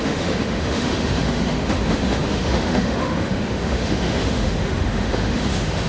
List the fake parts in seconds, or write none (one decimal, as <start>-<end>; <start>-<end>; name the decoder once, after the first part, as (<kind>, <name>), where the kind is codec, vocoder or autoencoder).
0.0-5.9 (autoencoder, DAC-VAE)